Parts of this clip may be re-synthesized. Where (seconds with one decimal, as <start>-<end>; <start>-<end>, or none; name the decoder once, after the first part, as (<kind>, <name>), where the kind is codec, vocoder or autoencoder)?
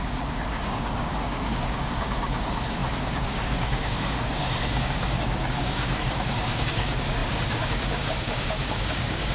0.0-9.3 (codec, DAC)